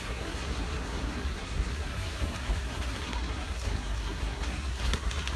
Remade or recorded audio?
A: remade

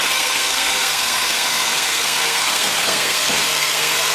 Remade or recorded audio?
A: remade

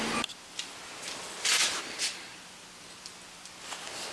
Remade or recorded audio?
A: recorded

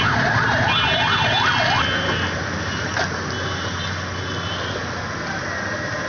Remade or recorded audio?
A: recorded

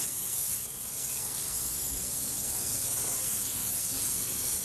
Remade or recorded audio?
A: remade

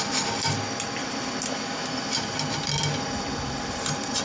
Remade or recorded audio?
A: recorded